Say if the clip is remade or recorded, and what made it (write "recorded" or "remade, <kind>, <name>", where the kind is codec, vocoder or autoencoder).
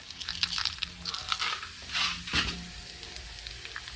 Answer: recorded